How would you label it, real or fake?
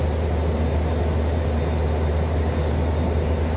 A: real